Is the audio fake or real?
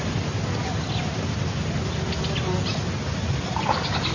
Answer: real